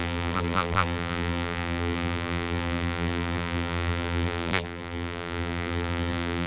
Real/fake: fake